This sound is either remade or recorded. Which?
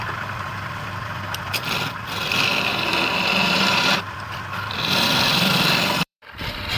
remade